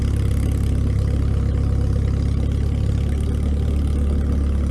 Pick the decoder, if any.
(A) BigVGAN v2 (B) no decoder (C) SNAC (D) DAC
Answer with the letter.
B